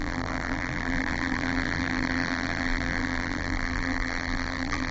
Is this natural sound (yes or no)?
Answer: no